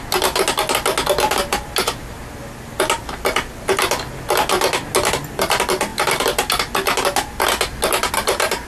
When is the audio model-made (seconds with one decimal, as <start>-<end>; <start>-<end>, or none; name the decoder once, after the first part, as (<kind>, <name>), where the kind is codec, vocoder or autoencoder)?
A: none